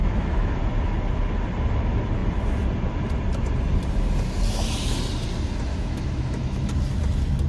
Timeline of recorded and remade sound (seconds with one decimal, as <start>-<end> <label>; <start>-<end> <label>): 0.0-0.6 remade; 0.6-5.7 recorded; 5.7-6.7 remade; 6.7-7.5 recorded